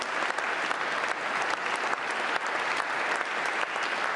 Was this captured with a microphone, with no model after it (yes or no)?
yes